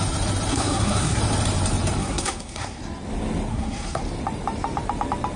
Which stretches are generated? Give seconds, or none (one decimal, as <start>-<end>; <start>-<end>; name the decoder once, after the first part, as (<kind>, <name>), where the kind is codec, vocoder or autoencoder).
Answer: 0.5-1.2 (codec, SNAC); 2.0-2.8; 3.5-4.0

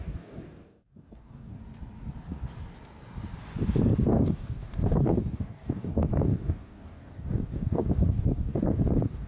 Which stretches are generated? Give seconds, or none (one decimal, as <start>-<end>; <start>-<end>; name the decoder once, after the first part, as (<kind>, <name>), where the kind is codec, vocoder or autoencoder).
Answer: 0.0-1.6 (codec, DAC); 4.0-9.3

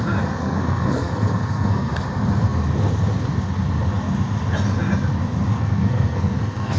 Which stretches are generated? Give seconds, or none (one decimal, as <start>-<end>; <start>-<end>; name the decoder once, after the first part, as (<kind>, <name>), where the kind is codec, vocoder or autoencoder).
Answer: 0.4-1.9 (codec, SNAC); 5.5-6.8

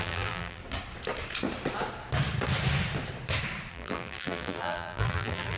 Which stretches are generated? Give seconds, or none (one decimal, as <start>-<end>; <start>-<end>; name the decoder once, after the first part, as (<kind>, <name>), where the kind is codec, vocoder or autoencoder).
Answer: 0.0-0.6 (vocoder, BigVGAN v2); 3.7-5.6

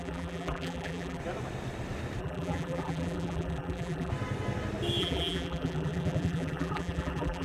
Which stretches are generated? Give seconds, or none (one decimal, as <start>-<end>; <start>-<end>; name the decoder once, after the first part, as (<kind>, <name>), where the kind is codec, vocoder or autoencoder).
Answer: 0.0-1.2 (vocoder, BigVGAN v2); 2.2-4.1; 5.0-7.4